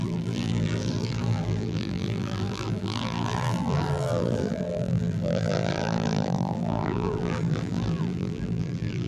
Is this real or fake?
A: fake